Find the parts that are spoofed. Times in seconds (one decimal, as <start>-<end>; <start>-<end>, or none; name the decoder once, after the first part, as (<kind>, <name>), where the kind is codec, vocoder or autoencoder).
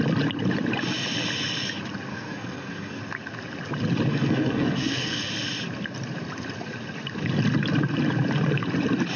2.1-3.0 (codec, SNAC); 4.1-5.3